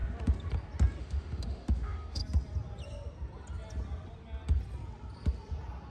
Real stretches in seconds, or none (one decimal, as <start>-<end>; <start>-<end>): 0.0-1.0; 2.2-5.9